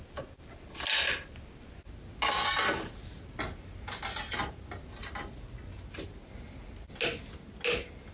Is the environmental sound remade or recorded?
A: recorded